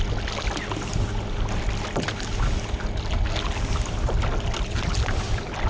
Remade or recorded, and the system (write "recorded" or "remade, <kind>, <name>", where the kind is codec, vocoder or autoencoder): recorded